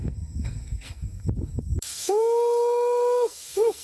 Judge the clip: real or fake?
fake